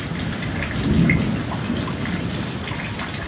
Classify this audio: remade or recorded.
recorded